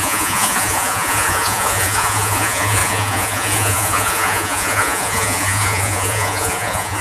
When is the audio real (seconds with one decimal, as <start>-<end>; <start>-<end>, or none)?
none